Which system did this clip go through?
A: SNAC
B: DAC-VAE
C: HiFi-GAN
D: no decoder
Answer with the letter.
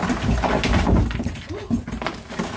D